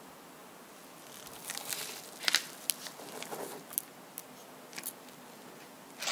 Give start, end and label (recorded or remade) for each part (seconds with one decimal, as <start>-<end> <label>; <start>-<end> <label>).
0.0-6.1 recorded